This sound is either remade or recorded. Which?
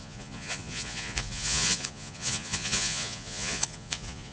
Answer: remade